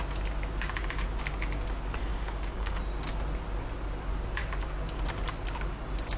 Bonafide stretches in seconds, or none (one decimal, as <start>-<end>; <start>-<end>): 0.0-2.1; 2.8-6.2